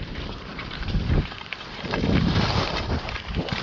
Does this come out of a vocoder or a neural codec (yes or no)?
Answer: yes